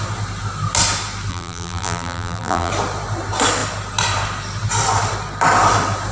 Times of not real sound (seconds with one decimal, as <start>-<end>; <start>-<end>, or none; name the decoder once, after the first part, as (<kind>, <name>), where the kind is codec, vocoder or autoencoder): 1.3-2.7 (vocoder, BigVGAN v2)